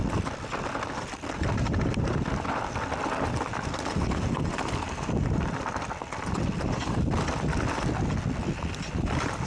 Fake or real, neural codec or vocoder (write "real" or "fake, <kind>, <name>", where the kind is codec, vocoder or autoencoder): real